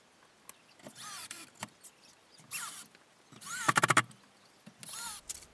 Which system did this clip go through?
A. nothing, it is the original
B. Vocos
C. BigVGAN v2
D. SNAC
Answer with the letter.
A